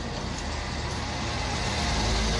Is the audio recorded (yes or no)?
yes